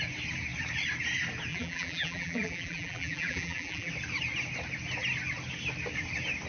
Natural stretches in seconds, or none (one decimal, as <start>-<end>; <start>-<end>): 0.0-1.5; 3.9-6.5